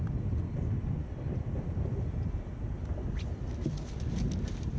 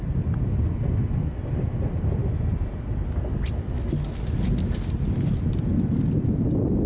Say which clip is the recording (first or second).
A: second